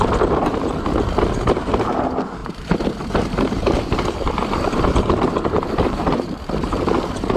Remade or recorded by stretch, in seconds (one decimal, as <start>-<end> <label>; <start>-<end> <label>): 0.0-2.4 recorded; 2.4-6.8 remade; 6.8-7.4 recorded